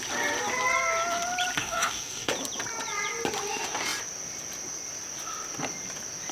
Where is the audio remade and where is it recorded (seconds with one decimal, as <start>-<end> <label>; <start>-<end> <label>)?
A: 0.0-1.6 recorded; 1.6-2.3 remade; 2.3-6.3 recorded